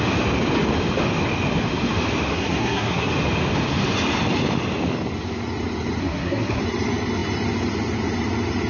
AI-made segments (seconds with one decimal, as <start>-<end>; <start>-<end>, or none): 2.3-3.1; 6.0-6.6